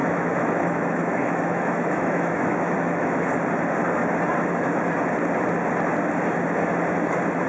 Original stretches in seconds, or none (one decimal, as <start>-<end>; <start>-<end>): 3.2-7.5